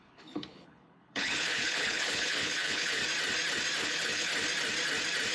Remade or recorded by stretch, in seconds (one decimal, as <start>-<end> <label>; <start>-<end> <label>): 0.0-3.0 remade; 3.0-3.8 recorded; 3.8-4.3 remade; 4.3-5.3 recorded